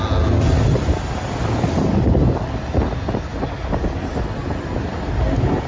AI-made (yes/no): no